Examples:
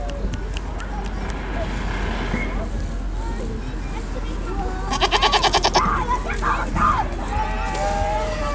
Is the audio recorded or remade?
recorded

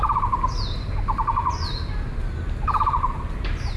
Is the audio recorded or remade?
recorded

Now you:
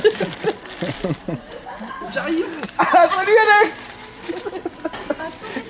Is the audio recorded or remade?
recorded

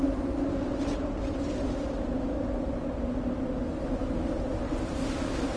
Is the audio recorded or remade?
recorded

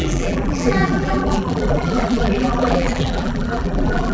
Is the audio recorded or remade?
remade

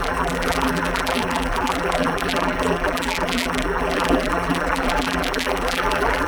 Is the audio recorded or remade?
remade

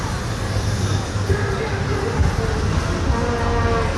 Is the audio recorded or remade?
recorded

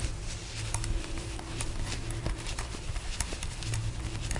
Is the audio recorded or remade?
remade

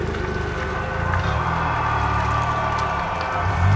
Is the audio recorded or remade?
recorded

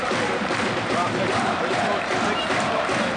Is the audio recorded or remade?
remade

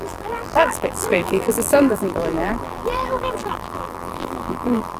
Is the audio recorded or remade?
remade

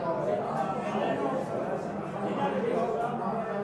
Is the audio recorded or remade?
recorded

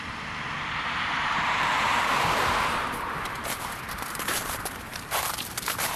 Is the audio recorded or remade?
remade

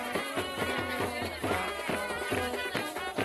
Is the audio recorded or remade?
recorded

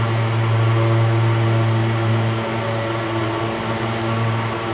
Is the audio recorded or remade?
recorded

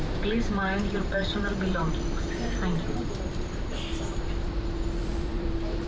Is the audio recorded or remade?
remade